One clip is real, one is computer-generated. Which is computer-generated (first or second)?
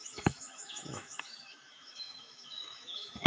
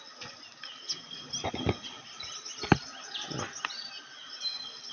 first